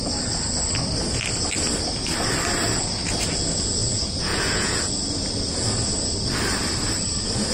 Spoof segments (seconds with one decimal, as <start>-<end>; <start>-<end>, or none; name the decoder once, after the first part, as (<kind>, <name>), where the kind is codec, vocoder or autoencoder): 3.8-4.8 (vocoder, Vocos)